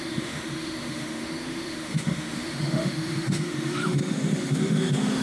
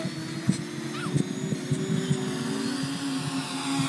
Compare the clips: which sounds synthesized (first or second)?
first